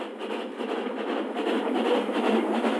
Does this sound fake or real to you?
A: real